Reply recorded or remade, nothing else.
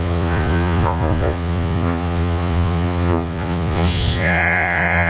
remade